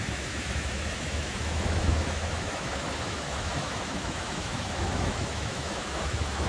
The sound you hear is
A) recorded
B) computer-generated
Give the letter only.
B